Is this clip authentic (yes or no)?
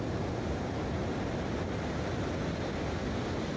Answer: yes